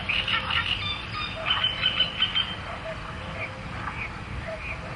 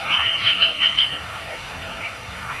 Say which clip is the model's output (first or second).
second